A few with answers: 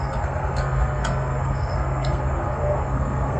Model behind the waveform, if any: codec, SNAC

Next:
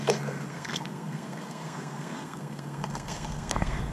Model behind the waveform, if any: codec, SNAC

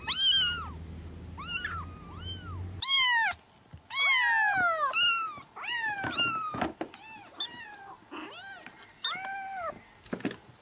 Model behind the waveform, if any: none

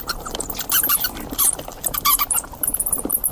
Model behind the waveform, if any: vocoder, BigVGAN v2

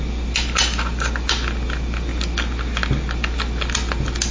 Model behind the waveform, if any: none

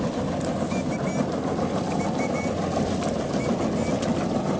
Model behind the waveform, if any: none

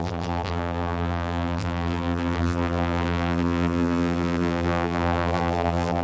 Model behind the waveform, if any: vocoder, BigVGAN v2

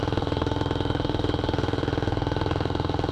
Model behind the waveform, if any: autoencoder, DAC-VAE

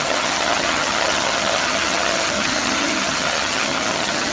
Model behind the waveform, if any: vocoder, HiFi-GAN